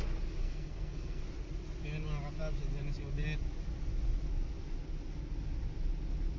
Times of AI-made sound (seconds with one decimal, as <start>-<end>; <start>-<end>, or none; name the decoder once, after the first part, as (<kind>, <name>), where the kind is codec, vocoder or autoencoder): 0.4-1.2 (codec, SNAC)

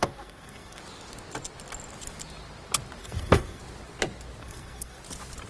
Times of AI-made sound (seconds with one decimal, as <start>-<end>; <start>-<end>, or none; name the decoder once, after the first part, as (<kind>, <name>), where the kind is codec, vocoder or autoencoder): 0.0-0.8 (codec, SNAC); 3.0-3.6; 4.4-5.0

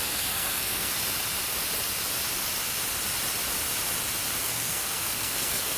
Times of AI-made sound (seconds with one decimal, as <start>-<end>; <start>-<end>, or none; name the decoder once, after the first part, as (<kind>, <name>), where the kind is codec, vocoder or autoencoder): 0.0-0.9 (codec, SNAC); 4.4-5.8

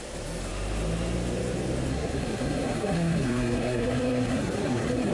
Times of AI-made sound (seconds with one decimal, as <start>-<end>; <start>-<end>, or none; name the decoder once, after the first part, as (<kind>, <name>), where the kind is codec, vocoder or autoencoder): 1.9-5.1 (codec, SNAC)

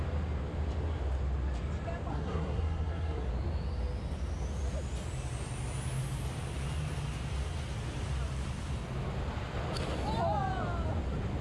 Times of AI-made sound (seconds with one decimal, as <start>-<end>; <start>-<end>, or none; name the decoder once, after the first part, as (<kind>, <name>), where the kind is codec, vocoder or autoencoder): 2.1-3.3 (codec, SNAC)

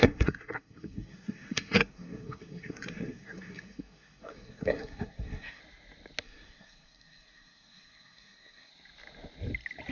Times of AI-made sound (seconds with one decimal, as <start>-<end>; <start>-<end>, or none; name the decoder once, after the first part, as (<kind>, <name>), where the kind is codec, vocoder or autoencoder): 0.0-5.6 (codec, SNAC); 6.2-8.7